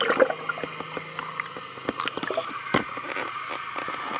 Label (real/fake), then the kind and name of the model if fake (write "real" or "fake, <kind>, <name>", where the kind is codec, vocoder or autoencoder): real